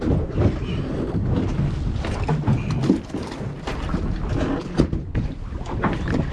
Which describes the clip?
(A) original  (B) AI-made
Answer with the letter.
A